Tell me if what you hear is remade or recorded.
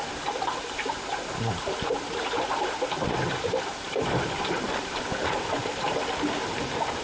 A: recorded